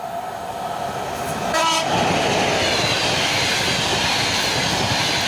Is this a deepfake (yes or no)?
no